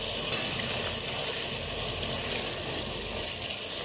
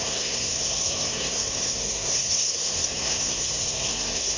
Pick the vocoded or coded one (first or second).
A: second